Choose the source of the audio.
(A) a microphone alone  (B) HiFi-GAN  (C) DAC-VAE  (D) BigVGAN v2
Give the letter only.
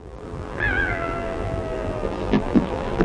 D